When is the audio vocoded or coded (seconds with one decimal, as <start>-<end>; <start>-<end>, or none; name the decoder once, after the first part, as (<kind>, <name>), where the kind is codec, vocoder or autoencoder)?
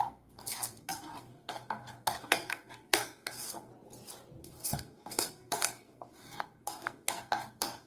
0.0-3.7 (codec, SNAC); 4.4-7.9